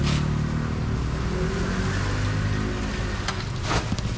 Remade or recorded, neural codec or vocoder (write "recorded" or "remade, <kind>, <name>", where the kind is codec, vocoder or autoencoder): recorded